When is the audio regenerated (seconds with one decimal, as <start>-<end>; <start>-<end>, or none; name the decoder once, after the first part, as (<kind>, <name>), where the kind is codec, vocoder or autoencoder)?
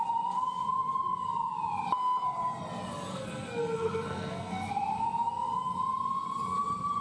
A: 3.1-4.7 (codec, SNAC)